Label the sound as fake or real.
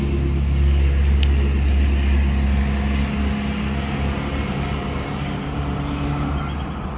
real